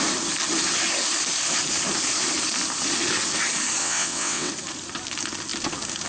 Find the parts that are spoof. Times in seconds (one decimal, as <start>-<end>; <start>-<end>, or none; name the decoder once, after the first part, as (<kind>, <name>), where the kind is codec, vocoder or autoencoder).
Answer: 3.8-4.5 (vocoder, WaveNeXt)